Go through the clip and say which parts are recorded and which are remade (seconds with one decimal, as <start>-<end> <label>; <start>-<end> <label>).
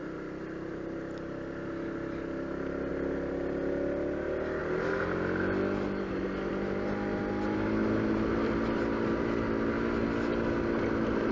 0.0-11.3 recorded